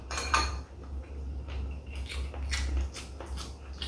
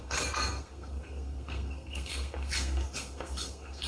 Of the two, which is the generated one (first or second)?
second